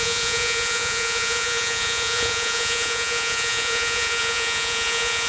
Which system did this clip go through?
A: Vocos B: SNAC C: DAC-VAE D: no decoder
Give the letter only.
A